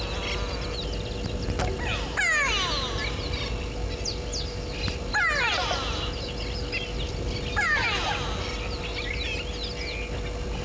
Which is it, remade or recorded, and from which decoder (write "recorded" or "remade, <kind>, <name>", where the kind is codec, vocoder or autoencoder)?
recorded